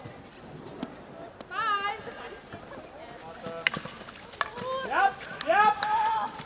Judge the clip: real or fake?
real